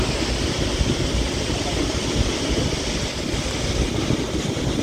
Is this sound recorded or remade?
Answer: recorded